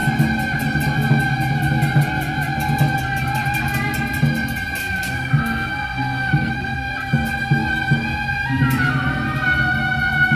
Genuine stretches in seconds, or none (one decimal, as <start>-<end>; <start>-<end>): 0.0-4.8; 6.9-10.4